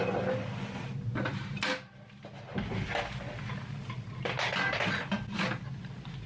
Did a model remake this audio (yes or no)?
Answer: no